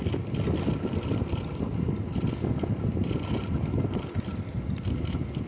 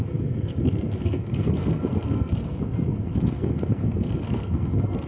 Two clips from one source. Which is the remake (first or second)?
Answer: second